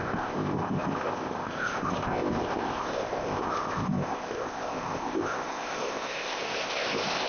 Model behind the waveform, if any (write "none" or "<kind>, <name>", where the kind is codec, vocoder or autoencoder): codec, ZipCodec